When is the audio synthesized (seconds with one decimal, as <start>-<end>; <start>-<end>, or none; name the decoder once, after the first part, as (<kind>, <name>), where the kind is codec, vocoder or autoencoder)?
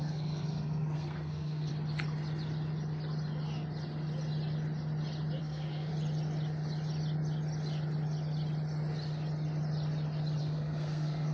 0.0-1.7 (codec, SNAC); 5.4-5.9; 10.4-11.3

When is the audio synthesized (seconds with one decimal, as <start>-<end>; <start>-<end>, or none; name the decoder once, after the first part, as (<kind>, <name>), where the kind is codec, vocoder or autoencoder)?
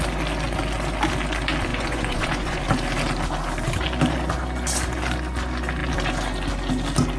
1.7-2.6 (vocoder, Vocos)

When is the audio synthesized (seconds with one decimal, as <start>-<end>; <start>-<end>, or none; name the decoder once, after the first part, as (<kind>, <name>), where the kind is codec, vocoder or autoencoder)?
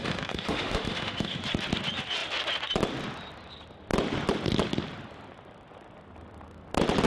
0.0-1.4 (autoencoder, DAC-VAE)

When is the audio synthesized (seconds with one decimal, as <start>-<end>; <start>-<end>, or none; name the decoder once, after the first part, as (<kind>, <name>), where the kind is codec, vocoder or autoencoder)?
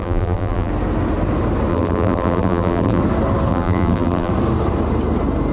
0.0-0.7 (vocoder, BigVGAN v2); 1.7-3.0; 3.5-4.3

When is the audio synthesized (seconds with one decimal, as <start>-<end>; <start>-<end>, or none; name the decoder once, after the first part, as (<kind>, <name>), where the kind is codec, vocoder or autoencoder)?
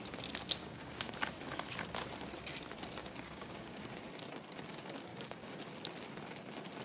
0.6-1.1 (codec, DAC); 3.0-3.8; 5.1-5.7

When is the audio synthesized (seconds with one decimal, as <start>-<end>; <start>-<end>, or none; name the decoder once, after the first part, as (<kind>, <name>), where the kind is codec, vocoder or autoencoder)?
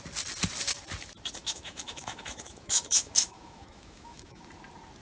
1.4-4.4 (autoencoder, DAC-VAE)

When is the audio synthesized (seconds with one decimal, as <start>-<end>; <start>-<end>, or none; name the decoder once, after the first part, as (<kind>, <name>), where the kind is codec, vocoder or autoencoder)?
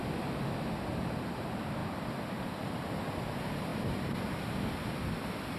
1.8-2.6 (vocoder, BigVGAN v2)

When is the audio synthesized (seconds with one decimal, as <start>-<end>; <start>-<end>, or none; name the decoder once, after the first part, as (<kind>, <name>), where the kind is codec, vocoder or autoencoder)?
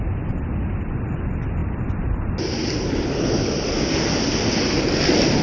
none